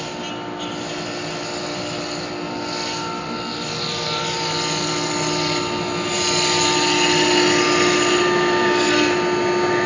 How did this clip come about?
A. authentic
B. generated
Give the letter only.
A